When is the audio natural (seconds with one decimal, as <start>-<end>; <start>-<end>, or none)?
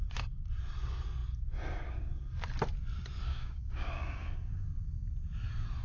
0.0-3.3; 4.7-5.8